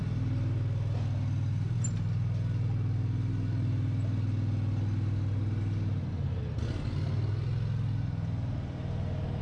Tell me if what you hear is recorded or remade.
recorded